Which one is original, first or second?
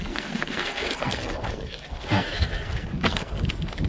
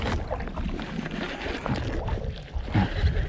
second